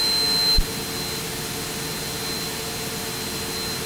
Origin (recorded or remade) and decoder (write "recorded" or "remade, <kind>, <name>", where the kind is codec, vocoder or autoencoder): recorded